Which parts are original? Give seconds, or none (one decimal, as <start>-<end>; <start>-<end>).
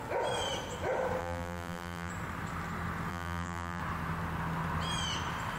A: 0.0-1.2; 2.1-3.1; 3.8-5.6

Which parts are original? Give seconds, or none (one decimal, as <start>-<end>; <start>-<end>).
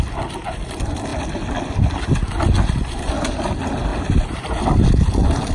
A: 0.0-3.9; 4.9-5.5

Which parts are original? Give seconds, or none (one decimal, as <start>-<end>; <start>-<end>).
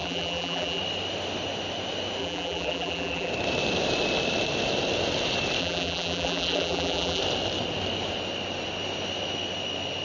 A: 0.8-2.2; 3.3-5.6; 7.2-10.0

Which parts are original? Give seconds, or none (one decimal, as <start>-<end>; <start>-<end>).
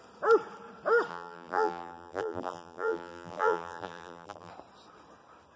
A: 0.0-1.1; 4.5-5.6